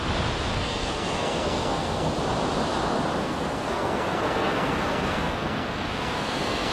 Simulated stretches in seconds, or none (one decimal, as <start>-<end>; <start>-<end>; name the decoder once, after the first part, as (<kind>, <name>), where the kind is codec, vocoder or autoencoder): 0.5-2.1 (codec, SNAC); 3.2-6.7

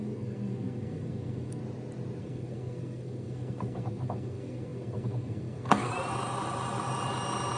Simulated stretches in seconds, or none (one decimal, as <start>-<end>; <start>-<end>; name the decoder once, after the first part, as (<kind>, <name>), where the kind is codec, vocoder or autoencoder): 0.0-1.6 (codec, SNAC); 2.2-5.9

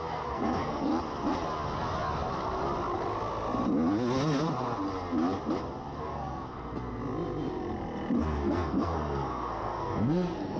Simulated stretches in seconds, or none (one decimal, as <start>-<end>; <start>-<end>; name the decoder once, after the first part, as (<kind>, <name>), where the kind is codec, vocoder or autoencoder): 0.0-0.9 (codec, SNAC); 6.0-7.0; 8.2-10.6